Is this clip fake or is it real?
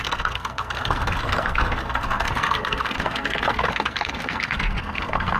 fake